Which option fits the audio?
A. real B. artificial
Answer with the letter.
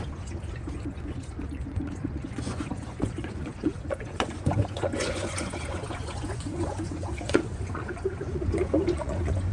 B